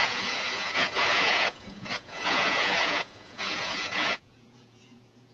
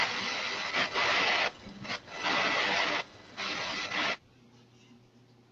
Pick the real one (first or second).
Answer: second